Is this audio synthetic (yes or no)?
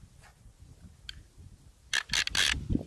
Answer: no